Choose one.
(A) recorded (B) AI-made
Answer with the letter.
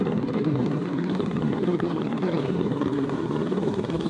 B